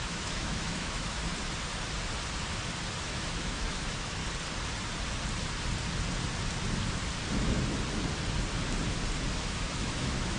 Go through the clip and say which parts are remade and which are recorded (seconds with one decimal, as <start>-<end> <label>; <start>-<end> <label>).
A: 0.0-1.3 remade; 1.3-3.0 recorded; 3.0-4.2 remade; 4.2-9.4 recorded; 9.4-10.4 remade

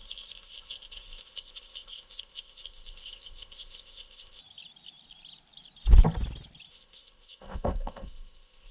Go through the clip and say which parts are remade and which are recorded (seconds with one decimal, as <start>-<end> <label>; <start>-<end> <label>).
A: 0.0-4.4 remade; 4.4-6.7 recorded; 6.7-8.7 remade